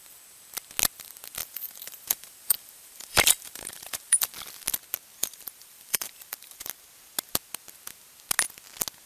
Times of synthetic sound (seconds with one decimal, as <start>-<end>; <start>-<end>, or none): 1.4-4.3; 5.2-6.7